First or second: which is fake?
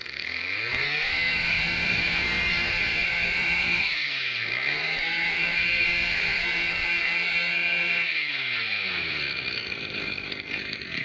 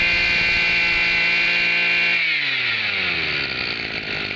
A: first